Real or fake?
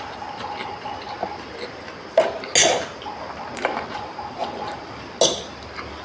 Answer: real